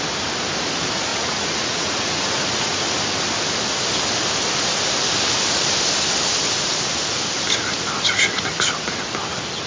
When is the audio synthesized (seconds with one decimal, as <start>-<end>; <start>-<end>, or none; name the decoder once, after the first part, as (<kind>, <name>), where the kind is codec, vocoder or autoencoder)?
1.1-2.8 (vocoder, Vocos)

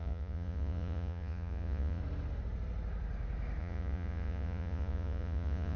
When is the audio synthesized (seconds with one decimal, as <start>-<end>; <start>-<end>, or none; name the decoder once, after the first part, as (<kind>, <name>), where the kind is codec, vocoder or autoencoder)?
0.0-2.0 (vocoder, Vocos); 3.6-5.8